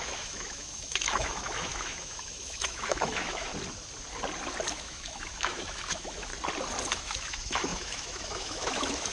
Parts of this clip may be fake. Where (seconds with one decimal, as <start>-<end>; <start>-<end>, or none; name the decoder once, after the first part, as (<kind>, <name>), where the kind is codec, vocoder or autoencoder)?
0.0-3.5 (autoencoder, DAC-VAE); 4.7-6.3; 6.9-9.1